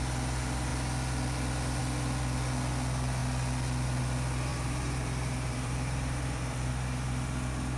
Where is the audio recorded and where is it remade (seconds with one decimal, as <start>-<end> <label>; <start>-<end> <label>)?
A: 0.0-4.5 recorded; 4.5-6.7 remade; 6.7-7.8 recorded